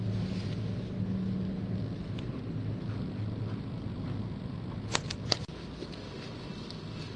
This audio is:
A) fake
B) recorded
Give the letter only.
B